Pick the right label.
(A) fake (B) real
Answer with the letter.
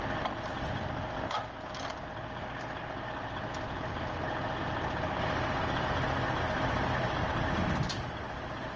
B